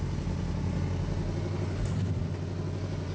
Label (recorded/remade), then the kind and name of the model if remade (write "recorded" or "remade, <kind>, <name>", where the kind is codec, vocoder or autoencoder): recorded